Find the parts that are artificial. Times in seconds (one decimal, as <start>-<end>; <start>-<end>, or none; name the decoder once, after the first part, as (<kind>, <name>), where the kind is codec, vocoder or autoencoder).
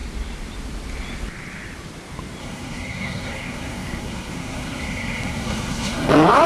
2.4-6.1 (codec, SNAC)